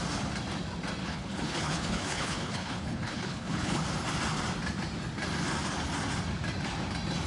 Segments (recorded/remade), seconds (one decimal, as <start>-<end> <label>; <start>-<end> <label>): 0.0-1.0 recorded; 1.0-3.8 remade; 3.8-7.3 recorded